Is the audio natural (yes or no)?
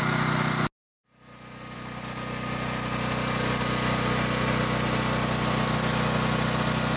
yes